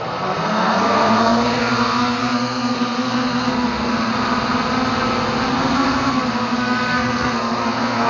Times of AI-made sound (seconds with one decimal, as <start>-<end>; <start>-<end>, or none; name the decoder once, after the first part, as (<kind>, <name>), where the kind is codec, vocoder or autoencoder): 0.0-4.1 (codec, SNAC); 5.5-8.1